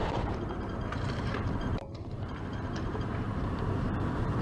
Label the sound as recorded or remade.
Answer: remade